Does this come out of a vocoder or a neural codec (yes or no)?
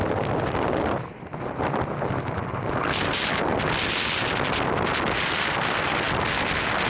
no